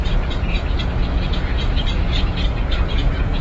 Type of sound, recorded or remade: remade